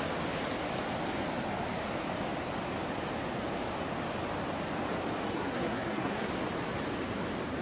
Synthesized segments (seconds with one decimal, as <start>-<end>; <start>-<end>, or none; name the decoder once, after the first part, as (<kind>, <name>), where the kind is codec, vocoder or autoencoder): 5.3-6.3 (codec, SNAC)